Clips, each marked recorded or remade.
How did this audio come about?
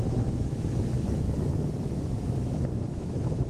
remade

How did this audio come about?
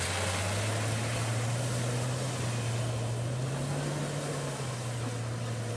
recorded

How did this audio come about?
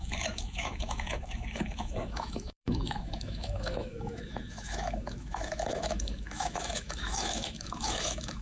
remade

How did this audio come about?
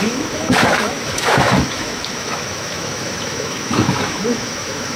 remade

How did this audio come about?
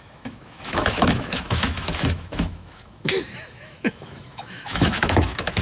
remade